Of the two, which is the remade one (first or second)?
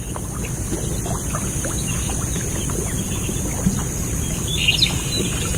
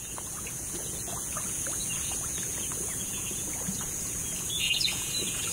second